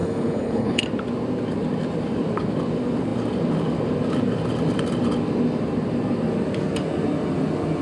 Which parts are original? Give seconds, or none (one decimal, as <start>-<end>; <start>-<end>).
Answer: 0.8-7.8